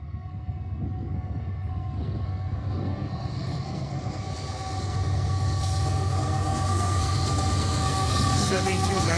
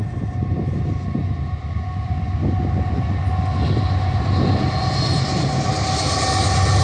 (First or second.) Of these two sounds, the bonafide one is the second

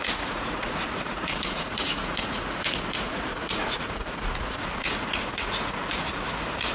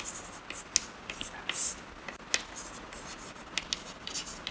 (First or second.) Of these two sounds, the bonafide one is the second